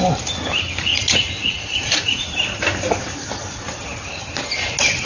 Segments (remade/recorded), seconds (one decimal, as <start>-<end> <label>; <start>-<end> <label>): 0.0-0.9 recorded; 0.9-2.3 remade; 2.3-5.1 recorded